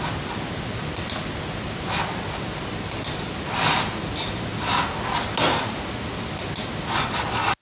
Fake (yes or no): no